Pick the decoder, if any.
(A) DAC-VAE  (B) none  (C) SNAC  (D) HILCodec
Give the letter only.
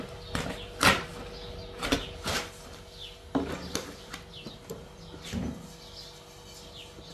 B